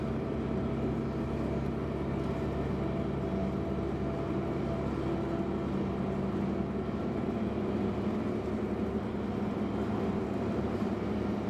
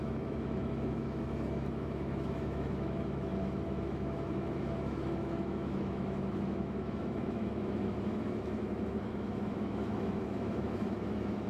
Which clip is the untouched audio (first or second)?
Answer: first